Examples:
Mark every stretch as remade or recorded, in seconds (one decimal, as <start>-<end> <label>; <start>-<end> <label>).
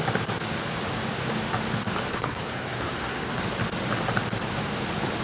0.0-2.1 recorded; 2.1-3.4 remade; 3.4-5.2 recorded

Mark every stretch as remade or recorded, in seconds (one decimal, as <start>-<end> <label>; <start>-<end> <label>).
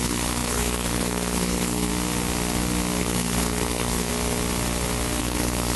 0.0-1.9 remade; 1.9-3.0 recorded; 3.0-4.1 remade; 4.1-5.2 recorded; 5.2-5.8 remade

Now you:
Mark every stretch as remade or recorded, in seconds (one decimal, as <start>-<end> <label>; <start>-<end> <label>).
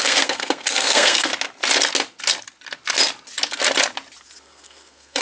0.0-1.3 remade; 1.3-4.4 recorded; 4.4-5.2 remade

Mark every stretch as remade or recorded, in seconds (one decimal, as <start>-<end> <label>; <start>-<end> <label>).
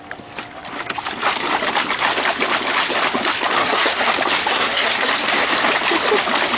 0.0-3.6 recorded; 3.6-4.1 remade; 4.1-4.5 recorded; 4.5-5.1 remade; 5.1-6.6 recorded